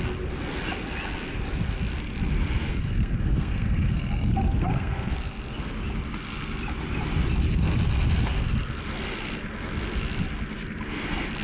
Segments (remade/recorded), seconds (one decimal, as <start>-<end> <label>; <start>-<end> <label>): 0.0-2.7 recorded; 2.7-5.1 remade; 5.1-11.4 recorded